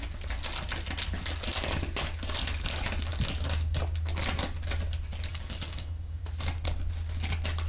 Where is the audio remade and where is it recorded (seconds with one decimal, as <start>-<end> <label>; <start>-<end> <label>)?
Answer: 0.0-5.3 recorded; 5.3-6.2 remade; 6.2-7.7 recorded

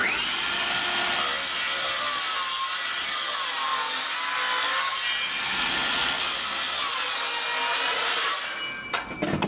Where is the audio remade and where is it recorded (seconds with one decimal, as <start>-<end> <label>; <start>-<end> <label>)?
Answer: 0.0-9.5 recorded

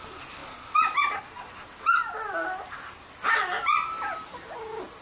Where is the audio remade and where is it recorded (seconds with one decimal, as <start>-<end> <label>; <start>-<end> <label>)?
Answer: 0.0-5.0 recorded

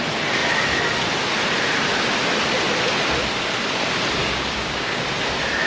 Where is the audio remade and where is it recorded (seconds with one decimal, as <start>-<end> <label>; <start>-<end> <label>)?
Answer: 0.0-4.2 recorded; 4.2-5.0 remade; 5.0-5.7 recorded

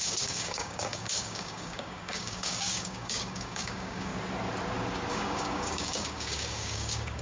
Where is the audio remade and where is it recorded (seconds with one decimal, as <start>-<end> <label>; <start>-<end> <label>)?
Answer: 0.0-4.1 remade; 4.1-5.1 recorded; 5.1-7.2 remade

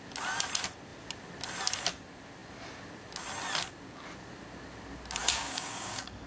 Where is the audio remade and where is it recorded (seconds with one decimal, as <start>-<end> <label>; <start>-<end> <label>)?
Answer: 0.0-5.2 recorded; 5.2-6.3 remade

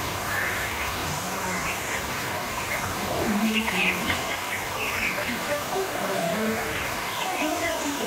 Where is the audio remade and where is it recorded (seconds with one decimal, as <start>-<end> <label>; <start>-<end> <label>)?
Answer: 0.0-8.1 remade